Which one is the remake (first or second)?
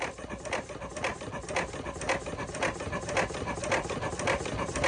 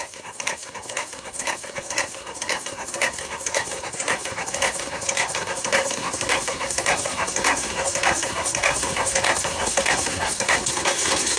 second